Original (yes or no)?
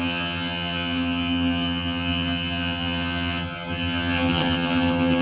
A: no